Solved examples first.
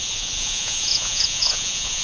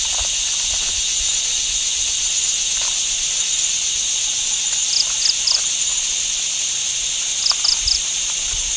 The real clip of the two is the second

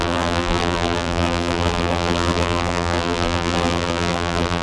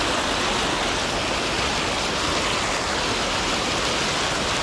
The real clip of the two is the second